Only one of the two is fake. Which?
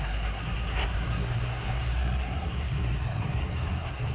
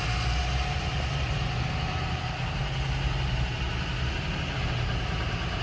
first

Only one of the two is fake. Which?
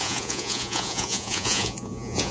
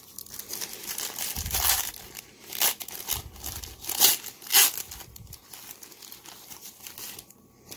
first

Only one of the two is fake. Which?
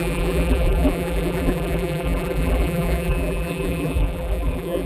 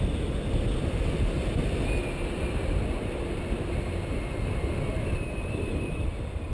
first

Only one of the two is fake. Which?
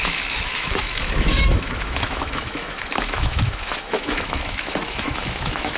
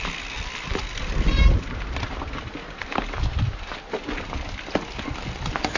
first